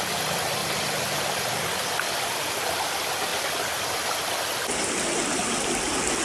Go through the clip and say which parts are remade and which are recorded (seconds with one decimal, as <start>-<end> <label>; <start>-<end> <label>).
0.0-6.2 recorded